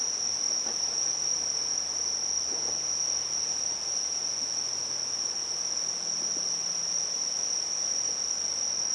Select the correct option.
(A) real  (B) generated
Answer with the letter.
A